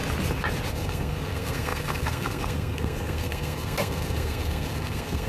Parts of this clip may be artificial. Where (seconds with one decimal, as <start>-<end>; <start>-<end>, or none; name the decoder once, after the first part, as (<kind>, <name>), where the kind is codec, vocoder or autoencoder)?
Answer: 0.7-5.3 (codec, SNAC)